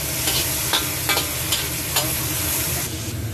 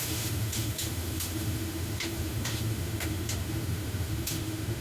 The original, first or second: first